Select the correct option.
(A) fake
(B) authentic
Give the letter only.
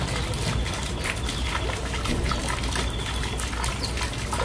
B